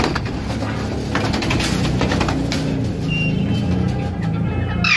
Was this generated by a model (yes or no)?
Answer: no